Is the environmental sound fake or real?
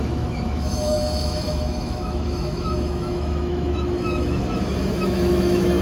fake